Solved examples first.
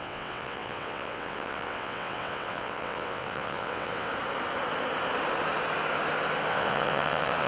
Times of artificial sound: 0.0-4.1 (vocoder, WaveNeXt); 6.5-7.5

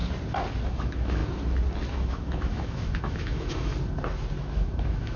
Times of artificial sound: 0.7-1.2 (autoencoder, DAC-VAE); 1.9-3.7; 4.4-5.2

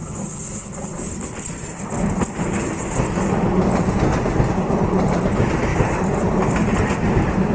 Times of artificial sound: none

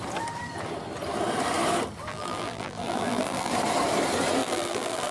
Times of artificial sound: 2.1-3.5 (vocoder, BigVGAN v2); 4.4-5.1

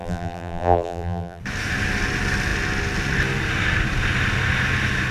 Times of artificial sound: 0.0-1.4 (vocoder, BigVGAN v2)

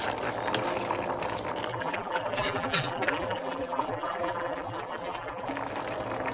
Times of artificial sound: 1.7-5.5 (vocoder, BigVGAN v2)

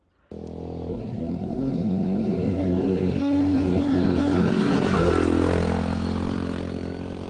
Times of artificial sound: 0.9-5.1 (codec, SNAC)